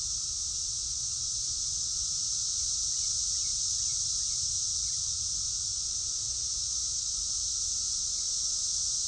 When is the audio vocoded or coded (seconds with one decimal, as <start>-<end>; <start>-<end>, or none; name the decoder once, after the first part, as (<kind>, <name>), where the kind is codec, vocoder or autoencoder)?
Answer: 0.8-2.2 (vocoder, Vocos); 5.7-7.3